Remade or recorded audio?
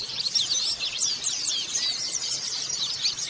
recorded